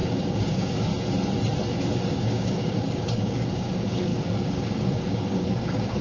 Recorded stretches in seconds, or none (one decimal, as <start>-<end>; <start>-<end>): 0.9-2.1